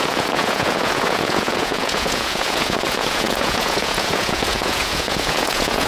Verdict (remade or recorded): remade